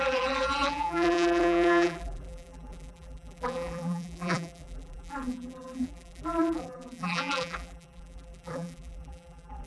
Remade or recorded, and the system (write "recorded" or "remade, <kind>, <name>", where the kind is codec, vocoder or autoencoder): remade, vocoder, BigVGAN v2